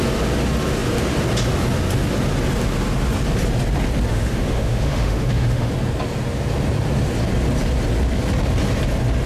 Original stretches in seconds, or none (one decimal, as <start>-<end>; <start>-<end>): 0.0-4.1; 5.7-9.3